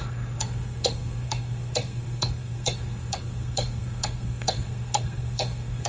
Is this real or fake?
fake